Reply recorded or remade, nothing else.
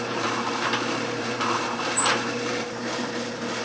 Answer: remade